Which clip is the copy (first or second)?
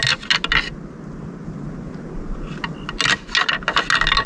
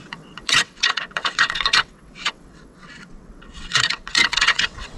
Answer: second